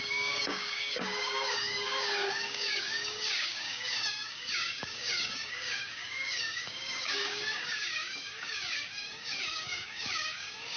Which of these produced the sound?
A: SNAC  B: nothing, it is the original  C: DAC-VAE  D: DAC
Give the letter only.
D